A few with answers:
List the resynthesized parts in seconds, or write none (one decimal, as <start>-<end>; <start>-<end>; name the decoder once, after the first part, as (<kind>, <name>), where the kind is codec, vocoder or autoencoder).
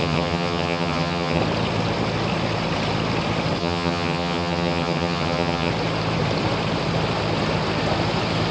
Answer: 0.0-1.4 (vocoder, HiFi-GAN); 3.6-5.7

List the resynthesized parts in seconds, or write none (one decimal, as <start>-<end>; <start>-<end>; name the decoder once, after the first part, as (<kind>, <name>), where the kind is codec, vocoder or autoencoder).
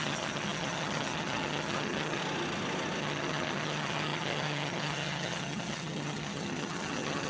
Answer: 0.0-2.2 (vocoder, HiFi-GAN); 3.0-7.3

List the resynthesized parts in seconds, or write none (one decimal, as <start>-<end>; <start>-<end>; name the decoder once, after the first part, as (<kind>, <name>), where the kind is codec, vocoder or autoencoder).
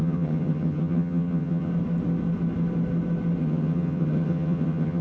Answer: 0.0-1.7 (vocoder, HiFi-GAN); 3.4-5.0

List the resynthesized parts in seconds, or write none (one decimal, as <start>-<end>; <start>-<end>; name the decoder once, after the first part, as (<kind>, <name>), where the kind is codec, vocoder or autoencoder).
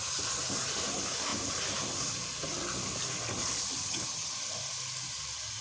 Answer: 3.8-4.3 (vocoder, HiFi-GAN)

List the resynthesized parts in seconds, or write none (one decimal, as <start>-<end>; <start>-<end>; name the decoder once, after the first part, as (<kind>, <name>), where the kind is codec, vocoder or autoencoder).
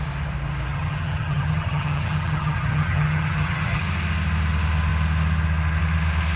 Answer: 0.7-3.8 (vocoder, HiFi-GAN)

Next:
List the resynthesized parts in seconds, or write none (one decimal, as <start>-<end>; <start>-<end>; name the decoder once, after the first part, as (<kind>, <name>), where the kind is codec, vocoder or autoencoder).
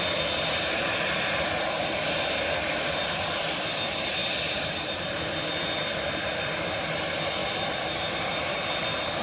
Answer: none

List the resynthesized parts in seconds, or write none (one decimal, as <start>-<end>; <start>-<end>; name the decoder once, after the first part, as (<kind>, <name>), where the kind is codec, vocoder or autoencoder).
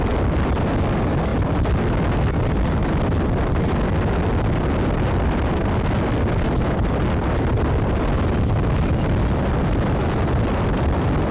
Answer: none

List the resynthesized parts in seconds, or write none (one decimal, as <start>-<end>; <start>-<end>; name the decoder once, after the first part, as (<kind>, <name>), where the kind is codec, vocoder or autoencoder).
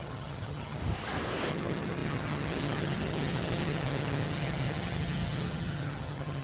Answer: 0.0-0.8 (vocoder, HiFi-GAN); 1.5-6.4